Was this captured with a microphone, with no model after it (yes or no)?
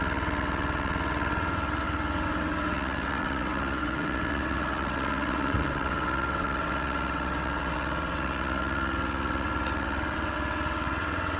no